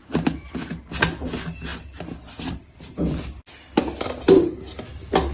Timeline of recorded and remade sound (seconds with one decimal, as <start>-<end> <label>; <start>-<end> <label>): 0.0-5.3 recorded